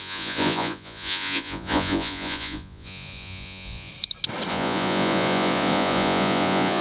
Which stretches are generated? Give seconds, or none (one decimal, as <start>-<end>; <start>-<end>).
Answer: 0.0-3.9; 4.5-6.8